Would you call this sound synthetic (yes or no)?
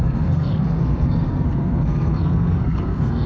yes